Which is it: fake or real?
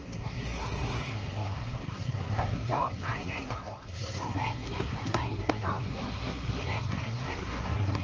fake